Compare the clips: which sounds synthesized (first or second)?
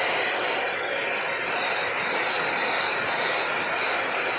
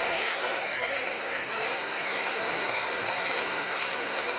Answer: second